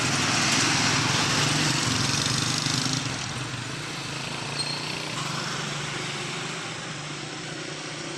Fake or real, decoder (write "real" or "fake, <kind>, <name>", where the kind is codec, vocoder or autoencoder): real